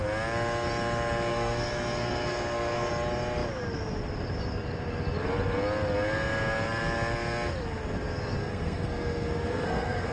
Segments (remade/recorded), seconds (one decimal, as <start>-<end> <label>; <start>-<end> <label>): 0.0-1.3 recorded; 1.3-2.9 remade; 2.9-8.4 recorded; 8.4-10.1 remade